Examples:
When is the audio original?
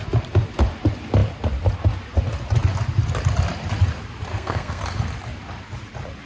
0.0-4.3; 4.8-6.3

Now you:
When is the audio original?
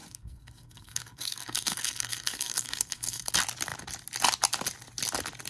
3.3-5.5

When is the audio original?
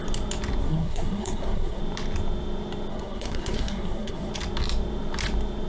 0.0-0.6; 1.8-2.9; 4.3-5.7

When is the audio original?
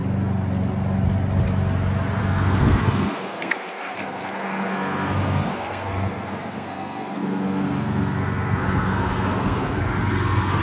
0.0-2.2